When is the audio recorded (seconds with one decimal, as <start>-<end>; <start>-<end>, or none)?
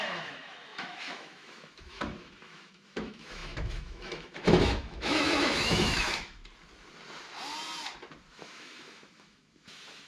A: 6.4-8.3